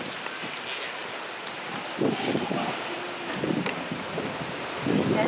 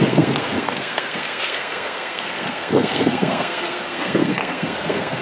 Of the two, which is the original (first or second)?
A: first